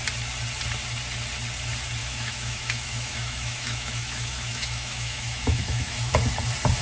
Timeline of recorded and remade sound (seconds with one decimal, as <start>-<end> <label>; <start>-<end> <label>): 0.0-2.0 recorded; 2.0-6.1 remade; 6.1-6.8 recorded